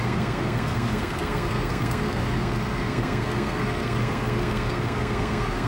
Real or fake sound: fake